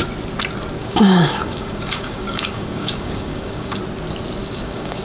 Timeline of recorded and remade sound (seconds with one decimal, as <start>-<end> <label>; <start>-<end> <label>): 0.0-0.8 recorded; 0.8-3.8 remade; 3.8-4.4 recorded; 4.4-5.0 remade